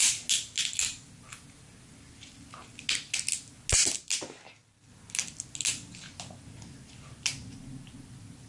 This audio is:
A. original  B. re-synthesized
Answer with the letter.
A